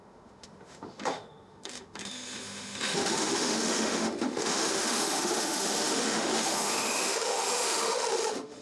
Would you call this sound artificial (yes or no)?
yes